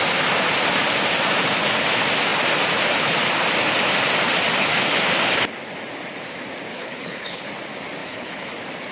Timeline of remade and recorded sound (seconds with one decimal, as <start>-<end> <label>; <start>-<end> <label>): 0.0-6.7 recorded; 6.7-7.5 remade; 7.5-8.0 recorded; 8.0-8.5 remade; 8.5-8.9 recorded